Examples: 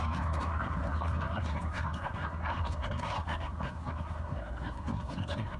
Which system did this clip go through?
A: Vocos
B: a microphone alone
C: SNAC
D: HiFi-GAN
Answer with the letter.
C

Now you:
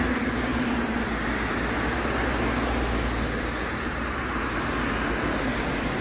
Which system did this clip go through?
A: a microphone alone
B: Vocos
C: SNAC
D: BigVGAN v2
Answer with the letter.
A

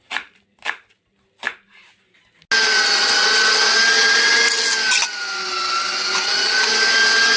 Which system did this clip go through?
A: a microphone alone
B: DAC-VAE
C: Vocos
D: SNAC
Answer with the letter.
A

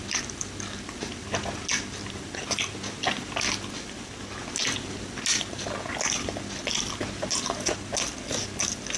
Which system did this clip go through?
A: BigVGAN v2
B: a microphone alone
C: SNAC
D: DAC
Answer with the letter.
B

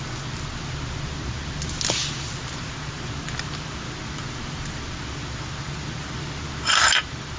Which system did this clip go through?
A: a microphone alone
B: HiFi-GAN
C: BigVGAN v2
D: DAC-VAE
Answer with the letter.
A